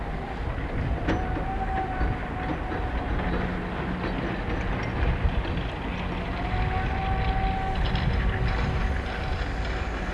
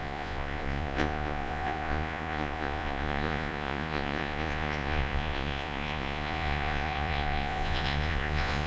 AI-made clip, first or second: second